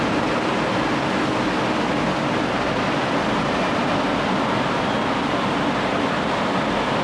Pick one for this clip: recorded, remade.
recorded